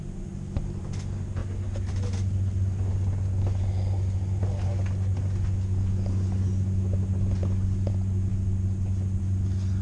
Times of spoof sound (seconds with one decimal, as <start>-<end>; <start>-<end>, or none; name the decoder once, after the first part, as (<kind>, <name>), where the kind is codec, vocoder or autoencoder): none

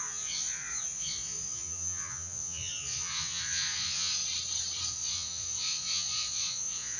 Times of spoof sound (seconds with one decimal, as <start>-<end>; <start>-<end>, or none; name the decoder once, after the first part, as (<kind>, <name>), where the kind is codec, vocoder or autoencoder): 0.0-4.2 (vocoder, Vocos); 4.9-7.0

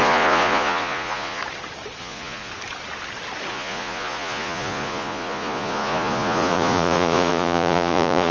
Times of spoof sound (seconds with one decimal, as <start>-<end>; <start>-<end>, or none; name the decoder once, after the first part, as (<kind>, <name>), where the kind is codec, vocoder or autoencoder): 0.0-1.4 (vocoder, Vocos); 2.0-2.5; 3.5-8.3

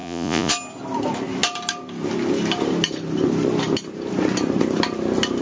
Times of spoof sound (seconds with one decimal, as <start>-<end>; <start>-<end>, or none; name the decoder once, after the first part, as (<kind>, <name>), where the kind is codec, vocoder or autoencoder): 0.0-0.5 (vocoder, Vocos)

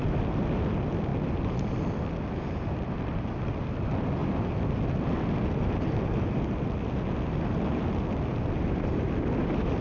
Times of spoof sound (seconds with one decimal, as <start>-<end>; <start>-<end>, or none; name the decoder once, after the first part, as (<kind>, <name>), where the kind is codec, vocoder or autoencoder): none

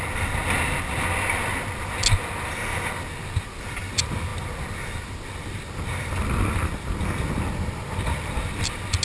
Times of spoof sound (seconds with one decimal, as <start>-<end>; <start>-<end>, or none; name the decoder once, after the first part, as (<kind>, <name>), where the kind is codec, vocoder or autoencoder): none

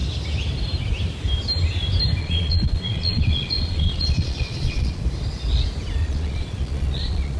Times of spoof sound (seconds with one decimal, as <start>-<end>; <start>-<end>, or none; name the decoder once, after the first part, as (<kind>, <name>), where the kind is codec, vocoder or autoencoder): 2.2-5.0 (vocoder, Vocos); 6.0-7.4

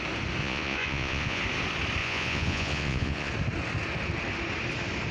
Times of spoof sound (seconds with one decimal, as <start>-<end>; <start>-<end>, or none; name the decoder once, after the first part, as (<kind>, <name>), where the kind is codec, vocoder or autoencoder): 0.4-1.4 (vocoder, Vocos); 2.0-3.3